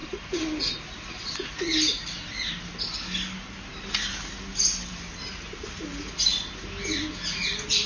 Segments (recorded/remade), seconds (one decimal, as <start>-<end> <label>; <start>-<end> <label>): 0.0-7.9 recorded